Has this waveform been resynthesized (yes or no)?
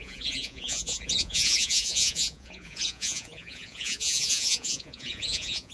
yes